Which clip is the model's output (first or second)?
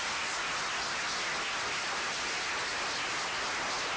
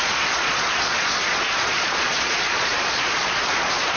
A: second